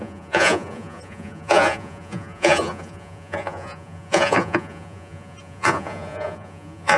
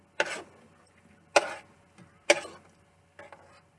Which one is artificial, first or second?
first